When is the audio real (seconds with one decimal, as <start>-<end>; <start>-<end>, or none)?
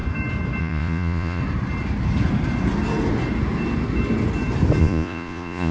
0.0-0.6; 1.4-4.8